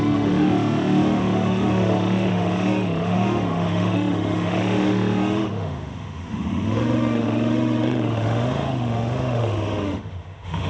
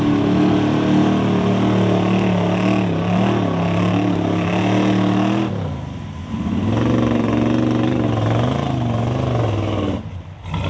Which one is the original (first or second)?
second